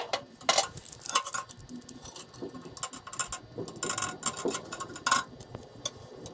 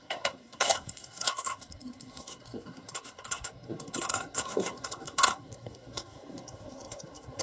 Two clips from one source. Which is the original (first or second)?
first